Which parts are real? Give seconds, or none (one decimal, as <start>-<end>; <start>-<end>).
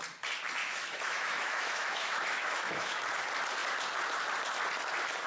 0.0-0.6; 3.0-5.3